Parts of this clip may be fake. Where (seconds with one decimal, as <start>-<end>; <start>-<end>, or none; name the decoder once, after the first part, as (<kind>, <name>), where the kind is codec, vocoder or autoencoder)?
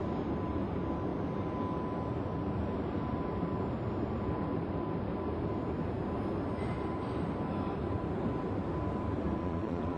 9.4-10.0 (vocoder, Vocos)